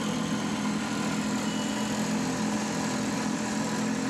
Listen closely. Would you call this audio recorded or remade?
recorded